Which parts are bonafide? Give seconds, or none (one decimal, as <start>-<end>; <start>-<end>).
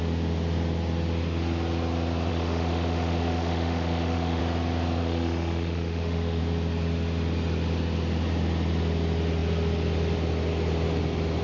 0.0-2.3; 4.4-5.0; 6.4-11.4